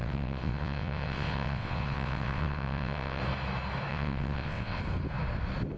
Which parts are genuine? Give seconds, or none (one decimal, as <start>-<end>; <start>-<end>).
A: 3.2-3.9; 4.8-5.8